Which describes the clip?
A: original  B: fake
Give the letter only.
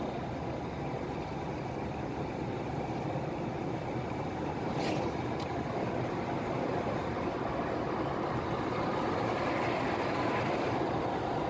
A